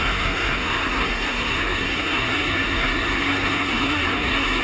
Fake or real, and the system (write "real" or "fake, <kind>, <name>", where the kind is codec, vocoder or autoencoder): fake, codec, SNAC